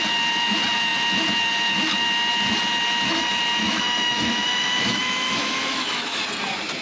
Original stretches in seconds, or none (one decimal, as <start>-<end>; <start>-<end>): 0.0-3.6; 6.2-6.8